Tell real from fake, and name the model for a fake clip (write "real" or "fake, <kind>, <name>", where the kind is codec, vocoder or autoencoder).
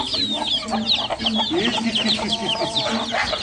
real